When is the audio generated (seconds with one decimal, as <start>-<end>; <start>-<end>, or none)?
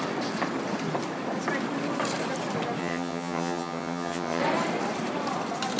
2.8-4.4